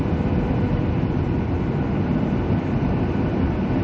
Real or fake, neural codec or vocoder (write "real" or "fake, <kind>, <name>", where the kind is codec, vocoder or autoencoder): fake, vocoder, BigVGAN v2